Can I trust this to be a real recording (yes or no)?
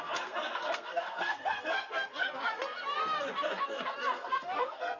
no